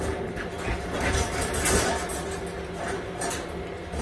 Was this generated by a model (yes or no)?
no